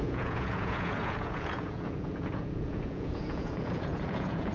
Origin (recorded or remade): remade